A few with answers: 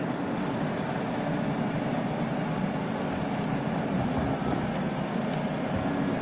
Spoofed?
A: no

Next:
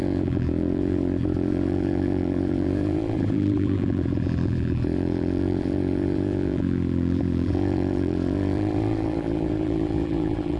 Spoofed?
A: yes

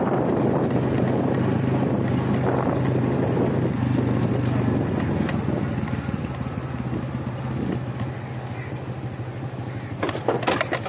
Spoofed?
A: no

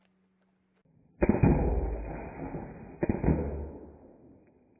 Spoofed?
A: no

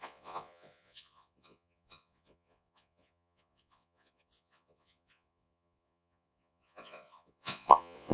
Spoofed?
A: yes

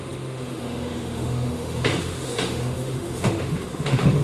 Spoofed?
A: yes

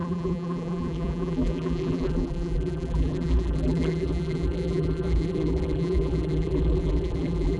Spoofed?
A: yes